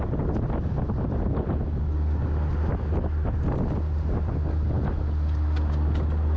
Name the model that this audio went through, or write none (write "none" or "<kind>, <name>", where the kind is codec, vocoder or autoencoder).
none